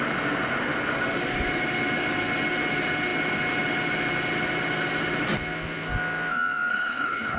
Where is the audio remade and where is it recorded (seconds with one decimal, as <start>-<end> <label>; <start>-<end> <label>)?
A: 0.0-6.7 recorded; 6.7-7.4 remade